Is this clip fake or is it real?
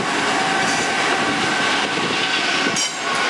real